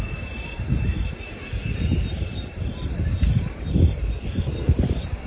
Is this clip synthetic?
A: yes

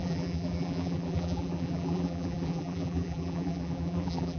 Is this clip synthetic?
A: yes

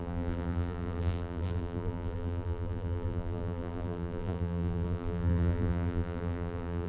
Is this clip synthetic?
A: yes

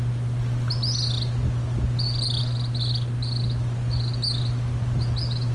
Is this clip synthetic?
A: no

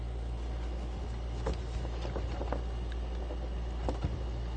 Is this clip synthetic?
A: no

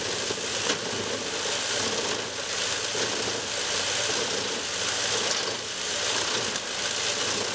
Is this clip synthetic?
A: no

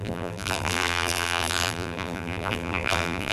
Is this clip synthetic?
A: yes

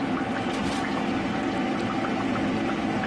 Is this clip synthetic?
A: no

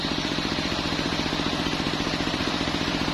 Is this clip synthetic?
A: yes